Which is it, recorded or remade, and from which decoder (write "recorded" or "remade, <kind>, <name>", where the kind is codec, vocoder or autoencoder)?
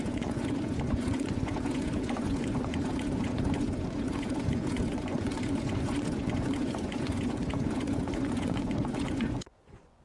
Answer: remade, vocoder, Vocos